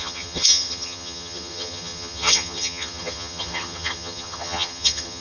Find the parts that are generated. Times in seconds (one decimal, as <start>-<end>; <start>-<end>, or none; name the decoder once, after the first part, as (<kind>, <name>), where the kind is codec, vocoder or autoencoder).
0.0-5.2 (vocoder, HiFi-GAN)